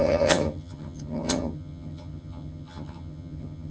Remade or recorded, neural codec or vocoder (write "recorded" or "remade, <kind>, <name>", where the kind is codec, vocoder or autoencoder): remade, vocoder, HiFi-GAN